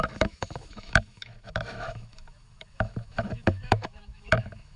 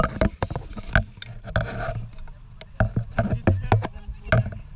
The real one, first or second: second